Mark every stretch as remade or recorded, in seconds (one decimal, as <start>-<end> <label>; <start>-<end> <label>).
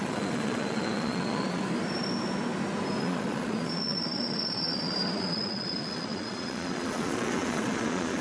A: 0.0-1.6 remade; 1.6-3.0 recorded; 3.0-8.2 remade